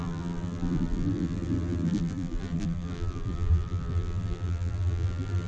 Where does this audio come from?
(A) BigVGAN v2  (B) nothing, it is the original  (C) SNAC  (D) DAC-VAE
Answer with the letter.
A